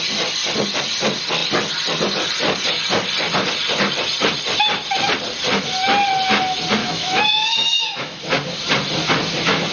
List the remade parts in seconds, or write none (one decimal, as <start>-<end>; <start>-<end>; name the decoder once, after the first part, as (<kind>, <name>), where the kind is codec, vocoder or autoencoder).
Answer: 6.8-8.2 (autoencoder, DAC-VAE)